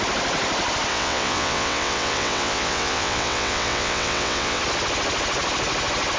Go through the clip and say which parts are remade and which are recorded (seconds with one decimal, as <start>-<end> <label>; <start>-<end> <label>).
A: 0.0-0.9 recorded; 0.9-4.6 remade; 4.6-6.2 recorded